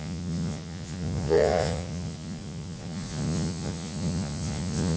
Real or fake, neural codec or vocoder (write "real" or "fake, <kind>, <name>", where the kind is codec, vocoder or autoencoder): fake, vocoder, Vocos